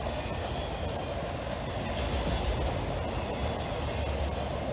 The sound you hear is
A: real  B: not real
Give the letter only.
A